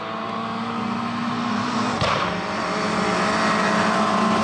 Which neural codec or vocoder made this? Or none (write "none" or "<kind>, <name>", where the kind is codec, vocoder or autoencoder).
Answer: none